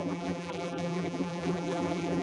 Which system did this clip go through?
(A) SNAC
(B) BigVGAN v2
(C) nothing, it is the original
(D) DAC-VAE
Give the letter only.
B